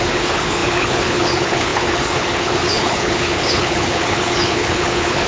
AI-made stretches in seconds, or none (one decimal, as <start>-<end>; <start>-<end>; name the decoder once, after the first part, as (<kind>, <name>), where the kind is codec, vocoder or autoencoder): 0.0-5.3 (codec, HILCodec)